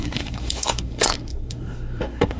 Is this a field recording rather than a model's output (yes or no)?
no